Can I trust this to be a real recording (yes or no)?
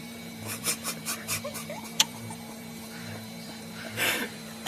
no